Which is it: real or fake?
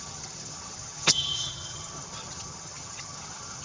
fake